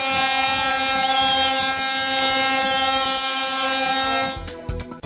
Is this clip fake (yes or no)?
no